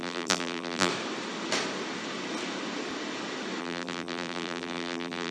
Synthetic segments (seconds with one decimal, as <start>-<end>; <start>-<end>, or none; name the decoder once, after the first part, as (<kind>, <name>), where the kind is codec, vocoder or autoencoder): 0.0-0.9 (vocoder, BigVGAN v2); 3.6-5.3

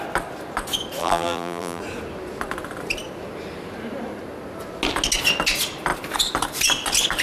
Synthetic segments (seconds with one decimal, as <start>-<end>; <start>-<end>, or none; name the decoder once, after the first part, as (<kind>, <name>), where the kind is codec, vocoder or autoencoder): 1.0-1.8 (vocoder, BigVGAN v2)

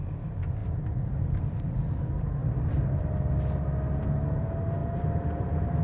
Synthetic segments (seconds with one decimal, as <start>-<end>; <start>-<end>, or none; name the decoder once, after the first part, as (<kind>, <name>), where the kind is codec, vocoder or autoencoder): 0.6-2.0 (vocoder, BigVGAN v2); 2.4-3.4; 4.8-5.8